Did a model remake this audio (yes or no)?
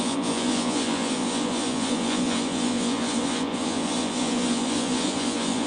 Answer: yes